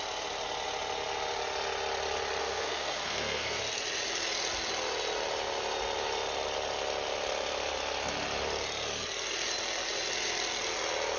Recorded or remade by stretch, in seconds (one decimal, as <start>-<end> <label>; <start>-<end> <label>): 0.0-2.4 recorded; 2.4-3.6 remade; 3.6-11.2 recorded